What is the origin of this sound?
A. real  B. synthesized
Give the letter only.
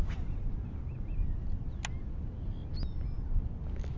A